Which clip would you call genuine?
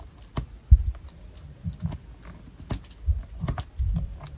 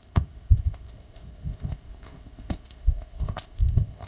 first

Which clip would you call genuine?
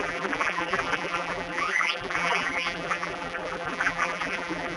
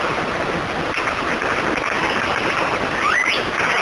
second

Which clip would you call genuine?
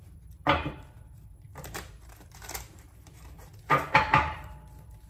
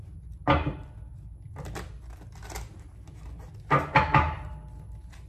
second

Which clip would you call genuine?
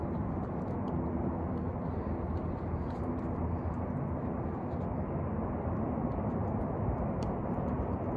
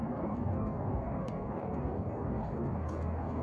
first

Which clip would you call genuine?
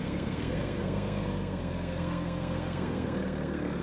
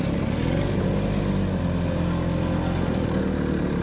second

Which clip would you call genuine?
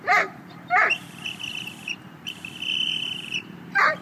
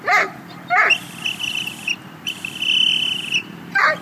second